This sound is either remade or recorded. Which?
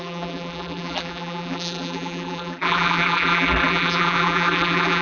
remade